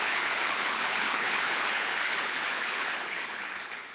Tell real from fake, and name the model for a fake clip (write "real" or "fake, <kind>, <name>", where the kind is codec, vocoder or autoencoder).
fake, codec, HILCodec